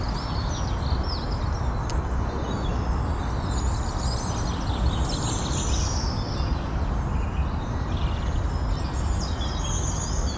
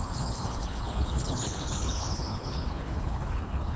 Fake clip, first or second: second